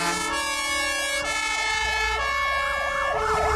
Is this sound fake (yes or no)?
no